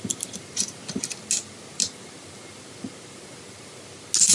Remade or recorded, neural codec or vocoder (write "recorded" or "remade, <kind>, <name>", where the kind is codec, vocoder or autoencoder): recorded